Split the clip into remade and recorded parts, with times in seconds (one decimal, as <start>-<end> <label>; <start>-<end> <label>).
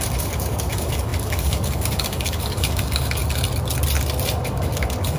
0.0-3.2 remade; 3.2-4.4 recorded; 4.4-5.2 remade